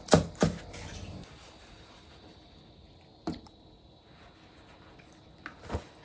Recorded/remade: recorded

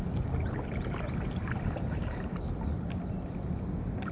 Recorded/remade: recorded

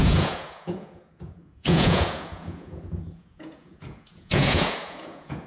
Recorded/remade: remade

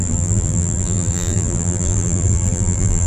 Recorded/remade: remade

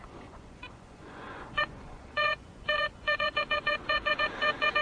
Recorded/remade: remade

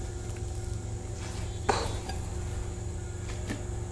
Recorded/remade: recorded